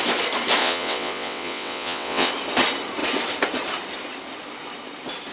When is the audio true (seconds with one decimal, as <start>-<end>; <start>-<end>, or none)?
0.0-0.6; 2.3-5.3